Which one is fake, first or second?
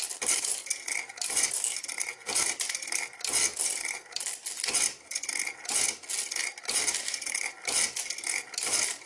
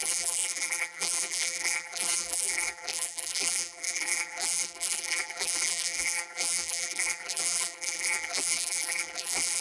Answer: second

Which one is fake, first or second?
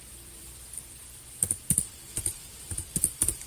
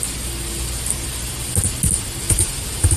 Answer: first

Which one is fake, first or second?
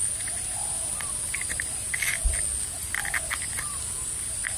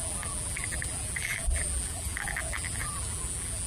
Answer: second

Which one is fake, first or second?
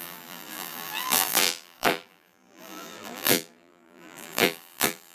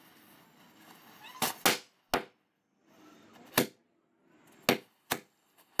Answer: first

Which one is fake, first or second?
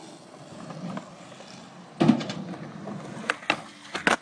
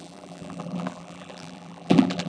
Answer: second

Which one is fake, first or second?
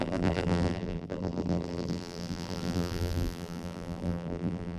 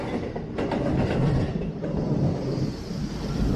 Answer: first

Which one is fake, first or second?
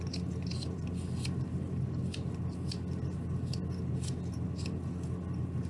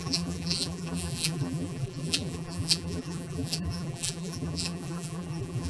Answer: second